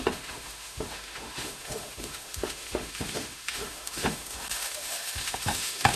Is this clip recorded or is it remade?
remade